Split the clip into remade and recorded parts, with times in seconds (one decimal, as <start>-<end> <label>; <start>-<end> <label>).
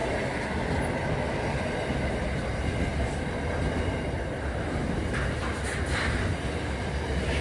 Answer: 0.0-7.4 recorded